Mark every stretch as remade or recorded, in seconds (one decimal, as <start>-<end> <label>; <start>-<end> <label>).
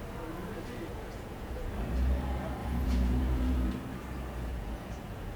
0.0-0.9 recorded; 0.9-1.7 remade; 1.7-2.6 recorded; 2.6-3.7 remade; 3.7-4.5 recorded; 4.5-5.4 remade